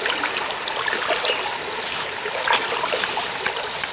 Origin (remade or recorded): recorded